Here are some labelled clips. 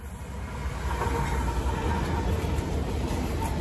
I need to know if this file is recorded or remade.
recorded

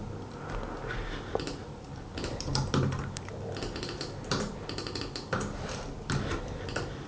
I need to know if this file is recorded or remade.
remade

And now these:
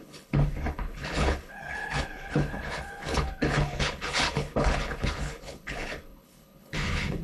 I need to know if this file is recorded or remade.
remade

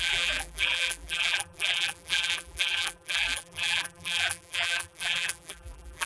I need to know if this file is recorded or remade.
remade